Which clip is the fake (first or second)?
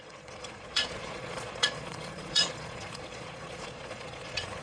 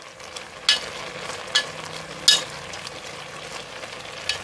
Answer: first